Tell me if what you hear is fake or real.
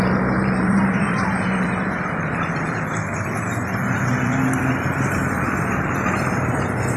fake